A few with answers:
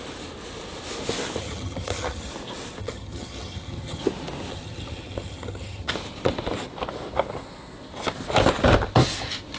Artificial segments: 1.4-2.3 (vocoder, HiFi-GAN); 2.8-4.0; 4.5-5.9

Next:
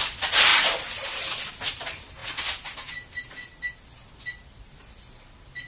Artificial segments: none

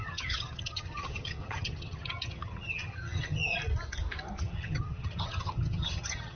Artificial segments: 0.0-3.5 (vocoder, HiFi-GAN); 4.4-6.4

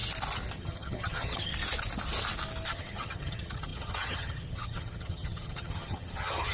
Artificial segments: 0.5-1.5 (vocoder, HiFi-GAN); 2.7-6.5

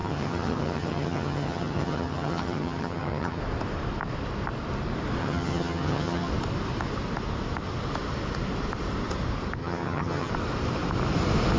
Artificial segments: 0.0-3.4 (vocoder, HiFi-GAN); 5.2-6.3; 9.6-10.3

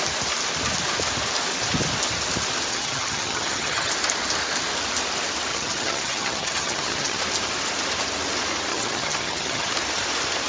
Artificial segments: 2.7-3.9 (vocoder, HiFi-GAN); 5.5-7.2; 8.7-9.7

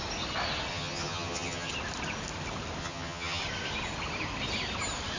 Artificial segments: 0.7-1.7 (vocoder, HiFi-GAN); 2.8-3.4